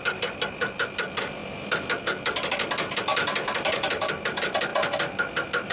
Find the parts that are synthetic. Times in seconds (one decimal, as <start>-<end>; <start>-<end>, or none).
none